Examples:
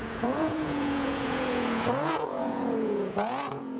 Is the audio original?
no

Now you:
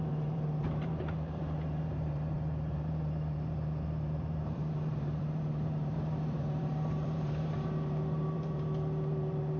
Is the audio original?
no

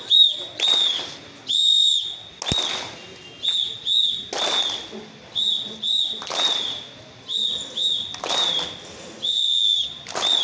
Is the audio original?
yes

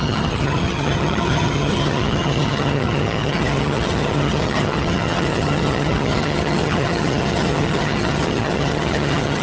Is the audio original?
no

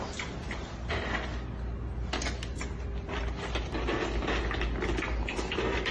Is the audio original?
yes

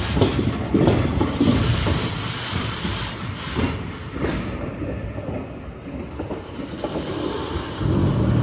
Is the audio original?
yes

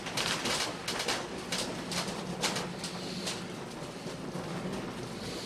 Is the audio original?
yes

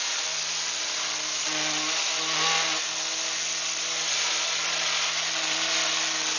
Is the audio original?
yes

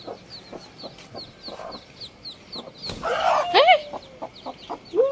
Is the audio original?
yes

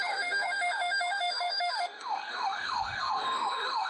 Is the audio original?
no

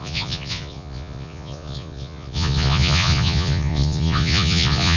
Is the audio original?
no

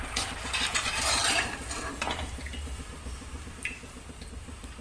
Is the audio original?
no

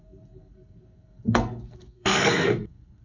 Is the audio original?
no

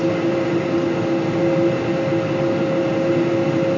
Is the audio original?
yes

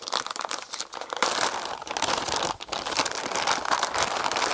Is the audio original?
yes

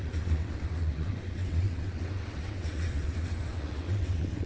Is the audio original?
no